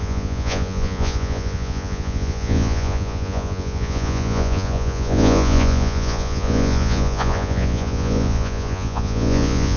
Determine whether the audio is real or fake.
fake